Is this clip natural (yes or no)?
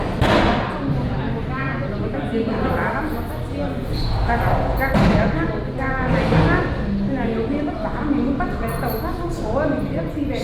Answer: yes